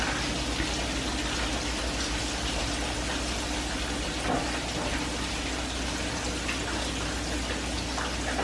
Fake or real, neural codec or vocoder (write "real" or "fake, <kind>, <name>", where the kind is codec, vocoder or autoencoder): real